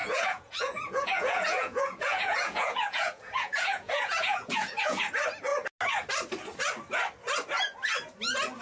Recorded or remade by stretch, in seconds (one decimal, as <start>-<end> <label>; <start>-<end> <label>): 0.0-5.0 remade; 5.0-8.6 recorded